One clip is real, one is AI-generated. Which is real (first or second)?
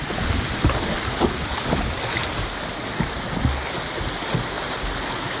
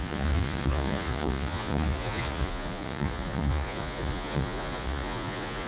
first